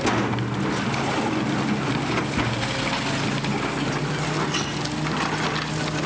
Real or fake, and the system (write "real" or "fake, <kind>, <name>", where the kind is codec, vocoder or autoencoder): real